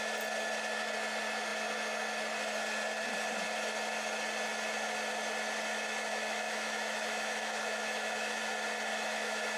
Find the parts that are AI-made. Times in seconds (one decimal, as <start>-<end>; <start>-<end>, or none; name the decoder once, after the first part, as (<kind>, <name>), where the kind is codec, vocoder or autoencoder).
6.1-8.4 (autoencoder, DAC-VAE); 8.9-9.6